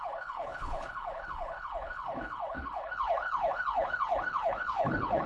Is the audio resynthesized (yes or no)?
yes